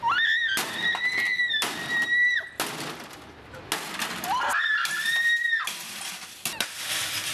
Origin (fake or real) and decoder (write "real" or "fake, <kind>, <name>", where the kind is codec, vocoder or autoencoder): real